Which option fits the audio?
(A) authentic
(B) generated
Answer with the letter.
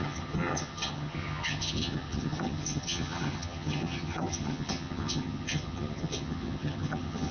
B